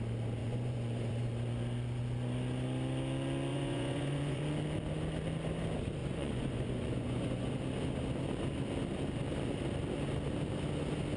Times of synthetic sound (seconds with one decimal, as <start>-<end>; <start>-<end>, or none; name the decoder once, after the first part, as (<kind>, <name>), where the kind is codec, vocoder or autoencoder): 0.4-1.3 (vocoder, Vocos); 3.5-4.4; 6.0-7.5